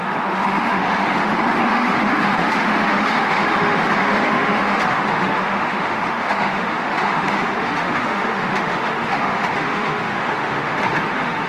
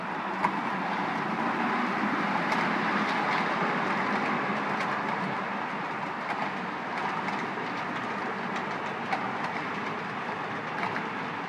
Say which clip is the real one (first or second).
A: second